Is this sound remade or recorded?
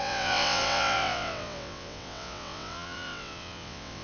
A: remade